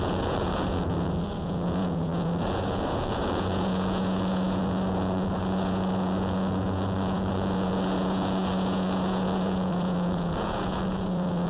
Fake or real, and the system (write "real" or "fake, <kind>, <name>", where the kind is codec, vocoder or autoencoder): fake, vocoder, Vocos